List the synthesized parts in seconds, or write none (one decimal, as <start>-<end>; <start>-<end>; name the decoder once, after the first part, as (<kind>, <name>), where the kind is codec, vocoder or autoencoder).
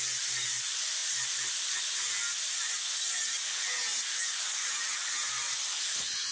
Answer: none